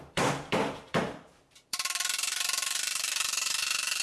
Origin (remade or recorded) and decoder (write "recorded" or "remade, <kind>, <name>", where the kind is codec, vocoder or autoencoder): remade, vocoder, BigVGAN v2